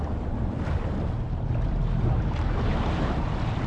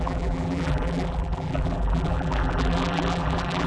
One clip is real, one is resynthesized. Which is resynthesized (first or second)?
second